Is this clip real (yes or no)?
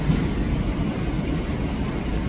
yes